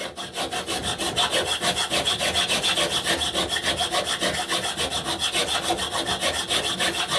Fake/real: real